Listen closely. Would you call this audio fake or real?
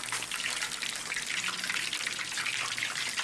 real